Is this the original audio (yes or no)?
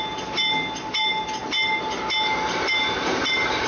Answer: yes